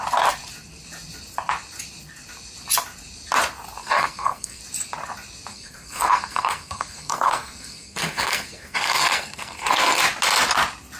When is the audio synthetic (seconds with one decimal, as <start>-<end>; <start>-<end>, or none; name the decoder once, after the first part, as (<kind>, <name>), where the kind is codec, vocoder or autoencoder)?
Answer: 3.8-4.6 (codec, SNAC); 5.5-10.0